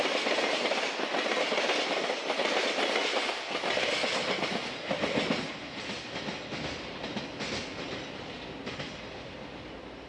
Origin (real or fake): real